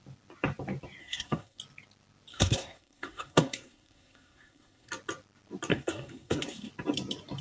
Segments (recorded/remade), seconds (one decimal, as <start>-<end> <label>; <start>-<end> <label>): 0.0-1.0 recorded; 1.0-1.6 remade; 1.6-2.3 recorded; 2.3-4.9 remade; 4.9-5.7 recorded; 5.7-6.7 remade; 6.7-7.4 recorded